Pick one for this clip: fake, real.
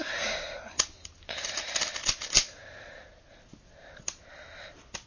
real